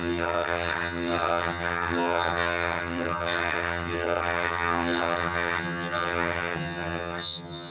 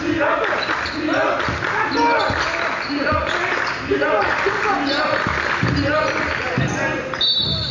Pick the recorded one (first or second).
second